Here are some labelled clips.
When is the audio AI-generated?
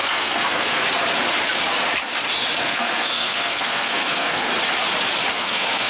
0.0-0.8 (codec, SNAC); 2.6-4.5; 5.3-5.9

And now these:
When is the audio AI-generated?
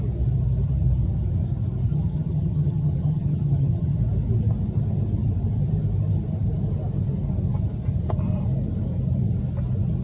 1.9-4.0 (vocoder, HiFi-GAN)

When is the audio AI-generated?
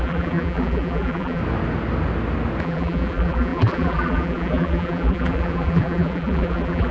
0.0-1.4 (vocoder, BigVGAN v2); 2.6-6.9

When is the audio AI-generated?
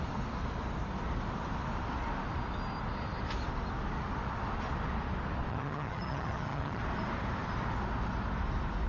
5.5-6.8 (vocoder, HiFi-GAN)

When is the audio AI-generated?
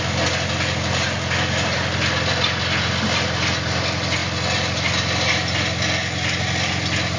none